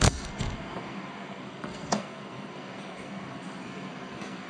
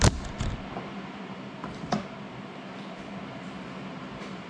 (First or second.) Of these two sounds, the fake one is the first